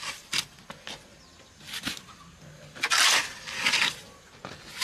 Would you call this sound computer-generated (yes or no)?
no